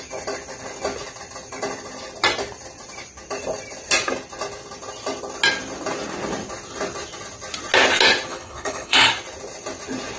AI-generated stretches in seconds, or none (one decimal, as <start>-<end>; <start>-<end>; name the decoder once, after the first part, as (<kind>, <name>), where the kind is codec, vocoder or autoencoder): 8.3-9.1 (codec, HILCodec)